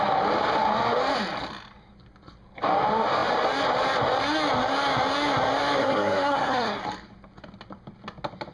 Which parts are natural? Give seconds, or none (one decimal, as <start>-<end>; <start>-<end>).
0.0-5.8; 6.8-8.5